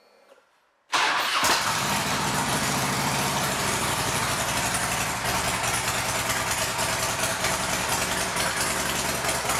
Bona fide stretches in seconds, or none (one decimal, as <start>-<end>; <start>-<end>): 0.0-1.3; 4.2-7.3; 7.9-9.6